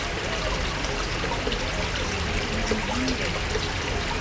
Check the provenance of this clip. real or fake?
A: real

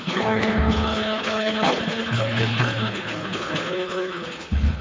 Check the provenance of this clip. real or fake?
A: fake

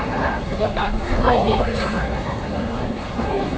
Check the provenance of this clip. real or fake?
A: fake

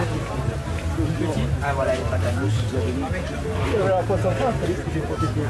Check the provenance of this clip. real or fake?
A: real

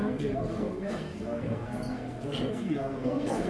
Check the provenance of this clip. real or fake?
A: fake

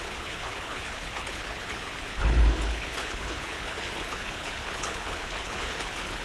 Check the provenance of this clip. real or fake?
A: fake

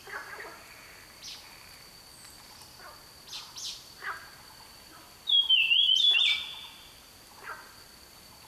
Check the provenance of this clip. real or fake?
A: real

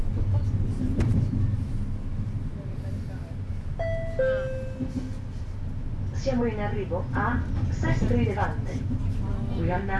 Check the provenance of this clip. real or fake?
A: real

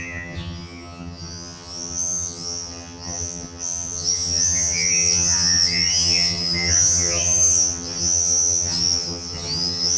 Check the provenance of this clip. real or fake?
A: fake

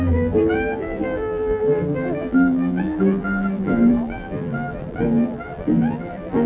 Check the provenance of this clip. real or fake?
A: fake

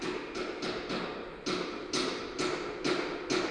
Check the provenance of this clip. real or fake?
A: real